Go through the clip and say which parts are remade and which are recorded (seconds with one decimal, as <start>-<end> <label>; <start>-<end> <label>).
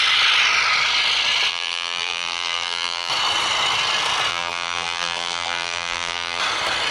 0.0-1.5 recorded; 1.5-3.1 remade; 3.1-4.3 recorded; 4.3-6.4 remade; 6.4-6.9 recorded